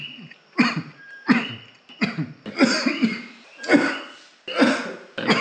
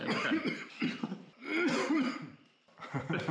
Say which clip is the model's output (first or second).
second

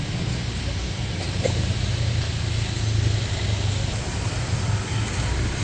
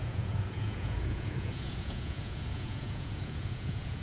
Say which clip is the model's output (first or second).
second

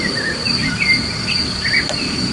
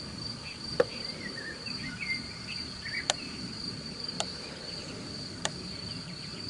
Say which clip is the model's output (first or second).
second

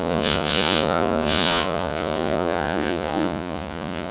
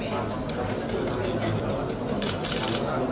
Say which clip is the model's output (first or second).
first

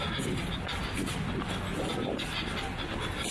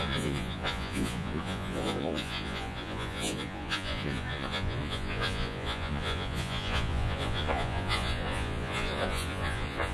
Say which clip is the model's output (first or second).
second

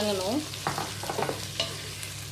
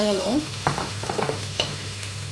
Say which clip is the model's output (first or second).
second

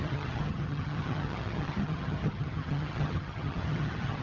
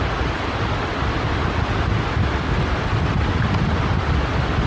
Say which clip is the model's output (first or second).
first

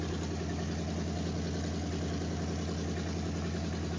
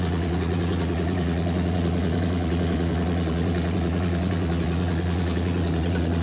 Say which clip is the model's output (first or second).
second